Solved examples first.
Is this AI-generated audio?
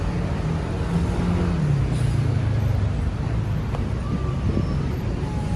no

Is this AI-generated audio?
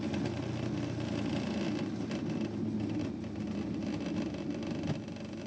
no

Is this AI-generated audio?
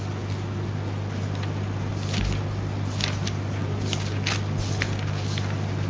no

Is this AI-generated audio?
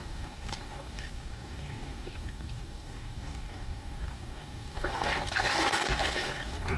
yes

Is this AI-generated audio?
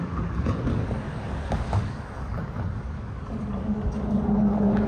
yes